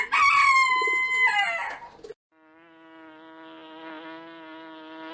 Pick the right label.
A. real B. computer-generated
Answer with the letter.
A